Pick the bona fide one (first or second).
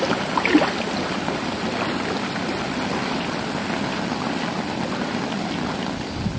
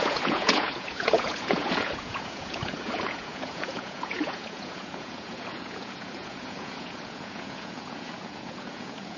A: first